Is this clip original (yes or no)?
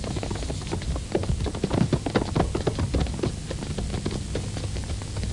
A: yes